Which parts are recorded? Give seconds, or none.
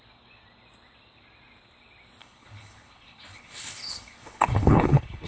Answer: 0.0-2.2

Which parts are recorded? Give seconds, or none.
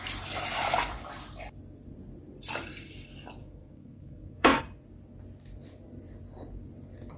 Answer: 0.0-3.4; 4.6-7.2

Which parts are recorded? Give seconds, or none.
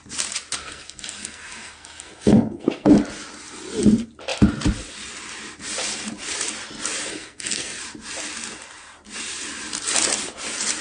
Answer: 0.0-0.6; 2.9-7.1; 7.8-10.8